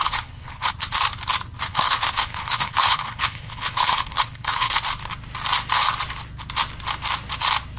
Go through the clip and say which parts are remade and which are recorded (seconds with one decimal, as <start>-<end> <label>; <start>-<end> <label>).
0.0-0.7 remade; 0.7-1.7 recorded; 1.7-4.8 remade; 4.8-7.8 recorded